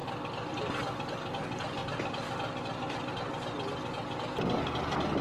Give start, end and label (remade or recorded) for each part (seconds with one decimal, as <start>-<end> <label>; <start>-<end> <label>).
0.0-5.2 recorded